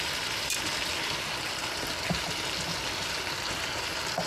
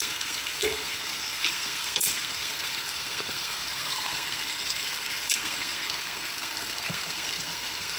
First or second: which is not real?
second